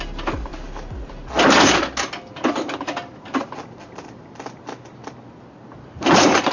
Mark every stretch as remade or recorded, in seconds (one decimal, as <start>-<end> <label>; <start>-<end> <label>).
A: 0.0-6.5 recorded